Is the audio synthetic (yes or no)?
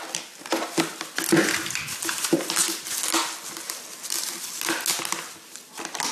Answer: no